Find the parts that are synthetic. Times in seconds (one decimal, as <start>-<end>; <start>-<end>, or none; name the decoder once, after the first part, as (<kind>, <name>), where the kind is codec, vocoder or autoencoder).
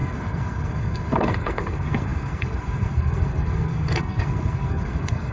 0.0-5.3 (codec, SNAC)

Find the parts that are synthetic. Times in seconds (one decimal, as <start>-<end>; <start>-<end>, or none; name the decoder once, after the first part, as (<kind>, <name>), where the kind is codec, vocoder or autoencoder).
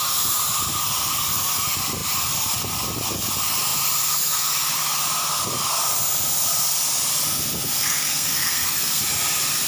7.8-9.0 (codec, SNAC)